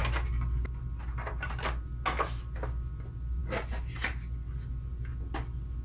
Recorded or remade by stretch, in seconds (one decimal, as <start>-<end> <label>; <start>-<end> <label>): 0.0-5.8 recorded

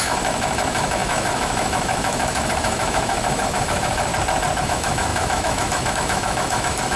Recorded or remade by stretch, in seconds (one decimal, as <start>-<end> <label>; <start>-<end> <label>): 0.0-4.1 remade; 4.1-4.6 recorded; 4.6-7.0 remade

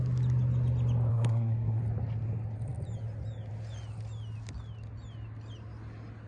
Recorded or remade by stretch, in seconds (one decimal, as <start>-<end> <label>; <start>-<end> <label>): 0.0-1.1 recorded; 1.1-1.8 remade; 1.8-6.3 recorded

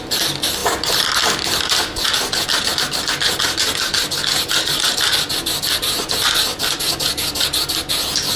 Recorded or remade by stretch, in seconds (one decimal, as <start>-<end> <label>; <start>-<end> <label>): 0.0-8.4 recorded